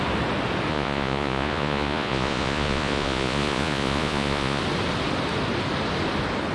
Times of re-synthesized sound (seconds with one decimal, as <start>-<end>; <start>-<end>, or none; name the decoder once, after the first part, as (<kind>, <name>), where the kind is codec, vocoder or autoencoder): 0.7-4.6 (vocoder, Vocos)